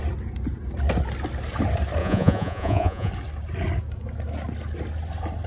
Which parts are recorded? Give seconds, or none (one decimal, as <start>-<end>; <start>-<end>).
0.0-2.0; 3.1-5.5